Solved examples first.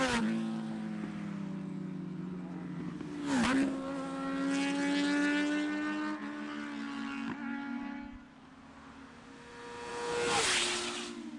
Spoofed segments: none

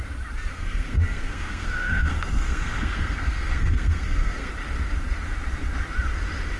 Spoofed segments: 0.5-4.5 (codec, SNAC)